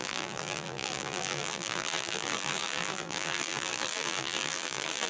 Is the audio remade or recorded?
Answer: remade